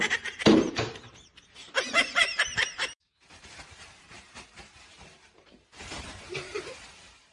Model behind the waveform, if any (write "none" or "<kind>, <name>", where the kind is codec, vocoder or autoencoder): vocoder, BigVGAN v2